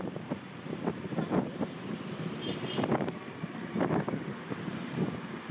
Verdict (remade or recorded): remade